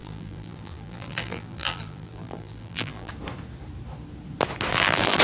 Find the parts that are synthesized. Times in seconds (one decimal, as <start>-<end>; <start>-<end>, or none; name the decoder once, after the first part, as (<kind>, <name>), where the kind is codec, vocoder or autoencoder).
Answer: 0.0-3.1 (vocoder, BigVGAN v2); 4.7-5.2